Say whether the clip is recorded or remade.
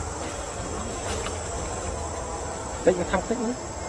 remade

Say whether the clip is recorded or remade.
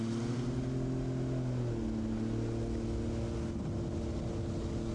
recorded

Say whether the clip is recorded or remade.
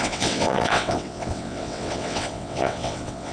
remade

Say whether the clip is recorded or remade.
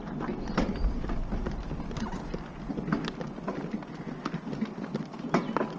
recorded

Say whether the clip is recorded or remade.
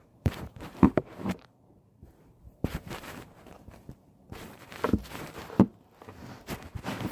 remade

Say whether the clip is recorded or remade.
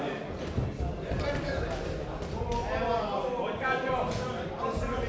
recorded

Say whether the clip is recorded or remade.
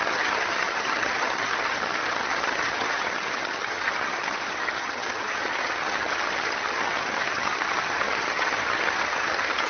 remade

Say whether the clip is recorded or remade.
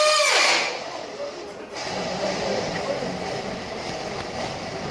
recorded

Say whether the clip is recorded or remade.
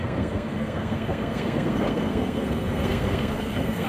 remade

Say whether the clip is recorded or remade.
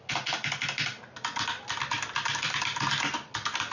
recorded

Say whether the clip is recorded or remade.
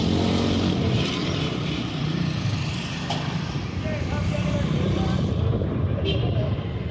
remade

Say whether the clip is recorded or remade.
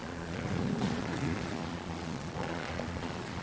remade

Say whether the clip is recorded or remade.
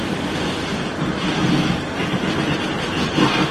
recorded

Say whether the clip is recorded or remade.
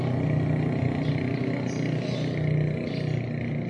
recorded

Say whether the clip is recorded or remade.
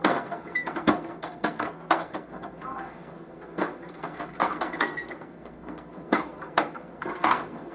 remade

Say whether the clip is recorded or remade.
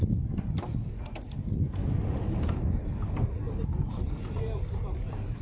recorded